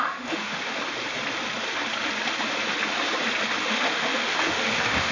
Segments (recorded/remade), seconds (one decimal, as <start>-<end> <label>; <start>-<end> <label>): 0.0-0.7 remade; 0.7-3.6 recorded; 3.6-5.1 remade